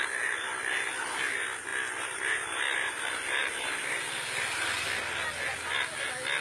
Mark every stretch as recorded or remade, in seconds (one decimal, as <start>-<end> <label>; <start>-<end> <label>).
0.0-1.7 recorded; 1.7-2.9 remade; 2.9-6.4 recorded